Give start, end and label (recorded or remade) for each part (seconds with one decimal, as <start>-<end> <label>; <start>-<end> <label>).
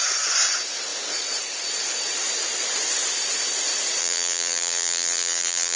0.0-4.0 recorded; 4.0-5.8 remade